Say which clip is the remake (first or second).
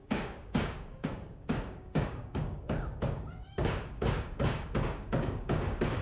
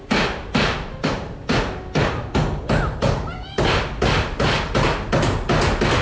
first